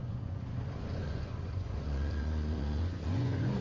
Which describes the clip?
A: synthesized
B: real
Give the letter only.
A